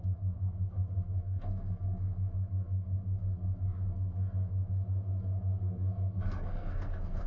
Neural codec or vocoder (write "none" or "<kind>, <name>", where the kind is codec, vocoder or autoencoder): codec, SNAC